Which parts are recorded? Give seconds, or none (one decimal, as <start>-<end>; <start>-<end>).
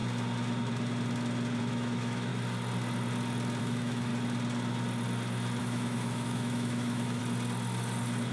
0.0-1.6; 2.3-3.6; 4.1-5.6; 7.2-8.3